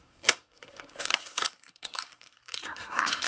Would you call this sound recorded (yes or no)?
no